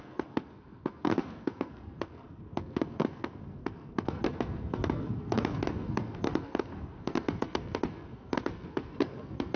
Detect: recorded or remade remade